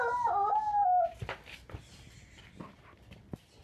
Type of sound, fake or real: real